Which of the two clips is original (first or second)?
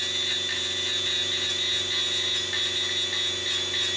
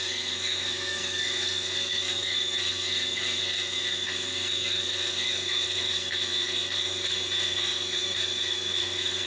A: first